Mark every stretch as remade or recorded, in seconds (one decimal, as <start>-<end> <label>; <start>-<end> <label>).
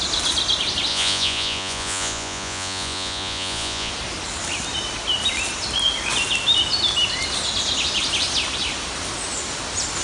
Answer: 0.0-0.9 recorded; 0.9-3.9 remade; 3.9-10.0 recorded